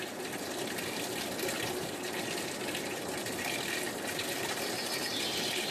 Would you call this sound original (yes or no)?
yes